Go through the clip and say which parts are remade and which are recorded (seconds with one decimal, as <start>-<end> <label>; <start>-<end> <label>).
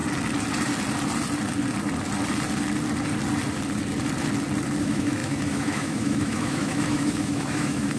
0.0-4.8 recorded; 4.8-8.0 remade